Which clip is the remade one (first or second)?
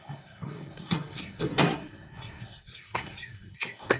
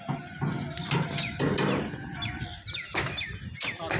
first